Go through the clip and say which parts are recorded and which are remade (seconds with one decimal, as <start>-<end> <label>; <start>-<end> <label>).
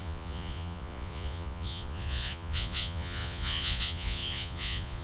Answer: 0.0-5.0 remade